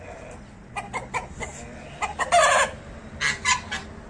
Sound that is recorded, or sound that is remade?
recorded